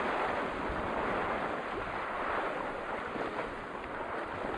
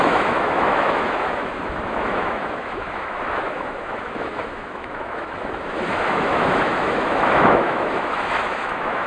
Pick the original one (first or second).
first